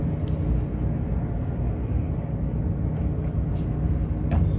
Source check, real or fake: real